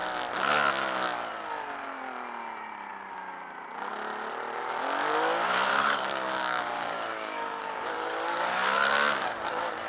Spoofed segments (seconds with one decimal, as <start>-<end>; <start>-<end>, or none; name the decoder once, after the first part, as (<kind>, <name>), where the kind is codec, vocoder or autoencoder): 5.7-9.9 (codec, DAC)